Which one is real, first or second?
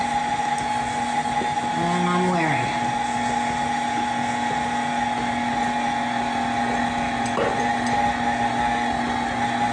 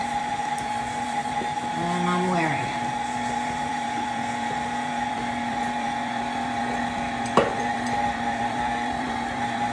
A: first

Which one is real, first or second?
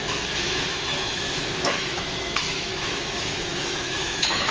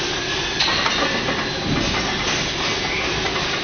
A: second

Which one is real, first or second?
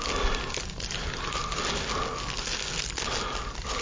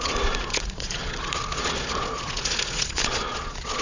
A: first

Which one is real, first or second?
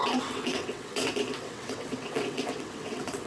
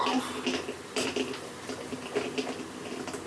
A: second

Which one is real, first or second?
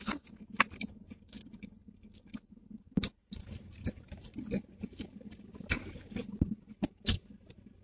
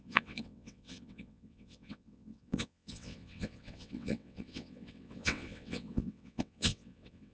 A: first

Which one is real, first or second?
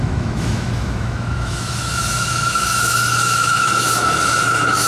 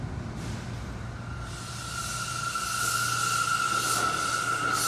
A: second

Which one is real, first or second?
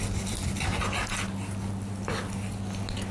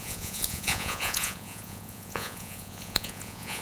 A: first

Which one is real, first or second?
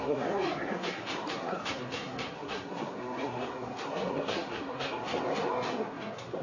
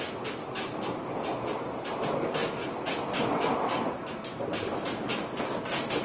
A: second